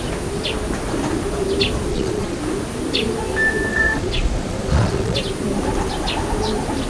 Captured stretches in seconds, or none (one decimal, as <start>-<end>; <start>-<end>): 0.0-1.9; 2.4-3.7; 5.2-6.9